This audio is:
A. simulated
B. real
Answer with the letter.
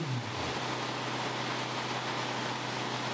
B